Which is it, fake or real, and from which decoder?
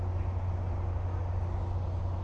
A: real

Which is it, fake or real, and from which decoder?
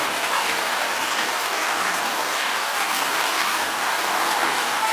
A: fake, codec, DAC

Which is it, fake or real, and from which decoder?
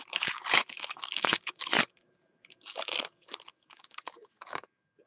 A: fake, codec, DAC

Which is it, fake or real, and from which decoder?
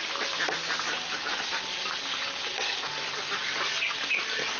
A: real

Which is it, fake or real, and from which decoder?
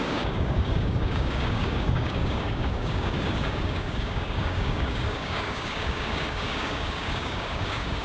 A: fake, codec, DAC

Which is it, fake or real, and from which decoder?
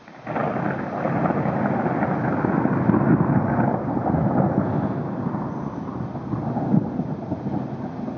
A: real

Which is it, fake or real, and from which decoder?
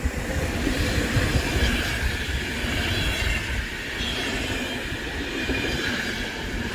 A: real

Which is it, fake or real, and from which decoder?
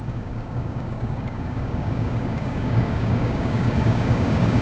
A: fake, codec, DAC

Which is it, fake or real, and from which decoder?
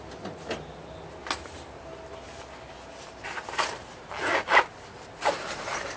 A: real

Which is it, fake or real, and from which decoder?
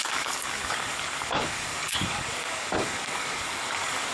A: fake, codec, DAC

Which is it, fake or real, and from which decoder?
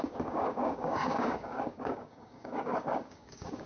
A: fake, codec, DAC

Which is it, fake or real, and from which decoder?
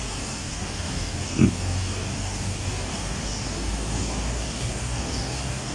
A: fake, codec, DAC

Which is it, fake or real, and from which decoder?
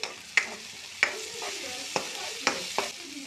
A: real